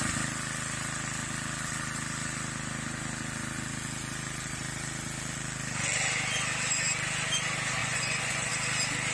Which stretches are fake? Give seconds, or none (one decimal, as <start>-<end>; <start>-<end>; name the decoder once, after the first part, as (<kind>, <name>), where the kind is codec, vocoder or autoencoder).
7.8-8.5 (vocoder, Vocos)